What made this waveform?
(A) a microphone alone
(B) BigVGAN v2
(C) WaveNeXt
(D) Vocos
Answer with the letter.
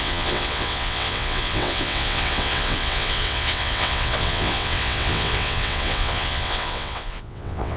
C